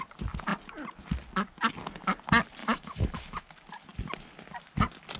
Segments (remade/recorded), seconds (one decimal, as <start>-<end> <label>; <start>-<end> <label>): 0.0-2.6 recorded; 2.6-3.5 remade; 3.5-5.2 recorded